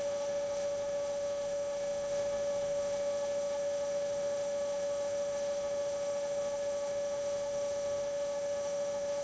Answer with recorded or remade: remade